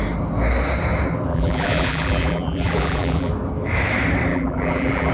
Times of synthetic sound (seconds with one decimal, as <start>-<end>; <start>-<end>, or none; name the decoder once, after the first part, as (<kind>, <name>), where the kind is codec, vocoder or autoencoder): 1.3-3.3 (vocoder, BigVGAN v2); 4.3-5.1